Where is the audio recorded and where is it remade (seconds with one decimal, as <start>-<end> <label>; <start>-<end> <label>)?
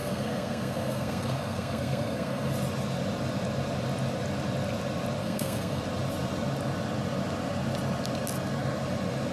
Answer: 0.0-2.5 remade; 2.5-5.2 recorded; 5.2-5.8 remade; 5.8-9.3 recorded